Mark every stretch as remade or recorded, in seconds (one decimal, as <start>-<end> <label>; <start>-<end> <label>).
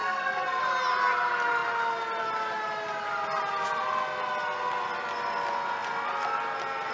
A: 0.0-0.6 remade; 0.6-6.9 recorded